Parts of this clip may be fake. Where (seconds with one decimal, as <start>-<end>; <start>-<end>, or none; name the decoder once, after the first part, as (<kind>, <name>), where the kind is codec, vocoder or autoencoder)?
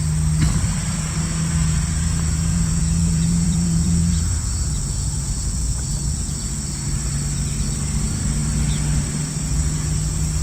1.6-6.5 (vocoder, Vocos)